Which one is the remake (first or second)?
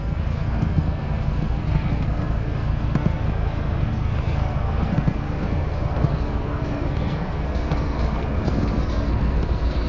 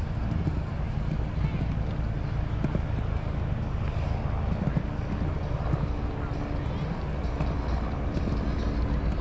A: first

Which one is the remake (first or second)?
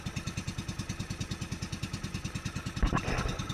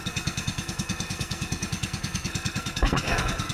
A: second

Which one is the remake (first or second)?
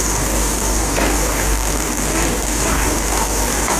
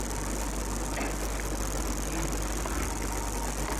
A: first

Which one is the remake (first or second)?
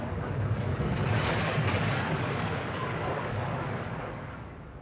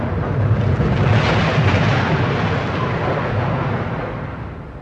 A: first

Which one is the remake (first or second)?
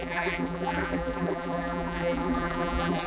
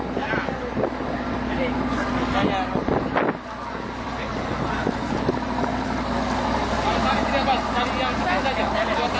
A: first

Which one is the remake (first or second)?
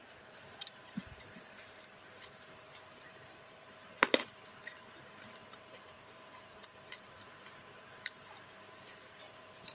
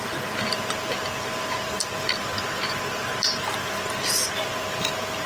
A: first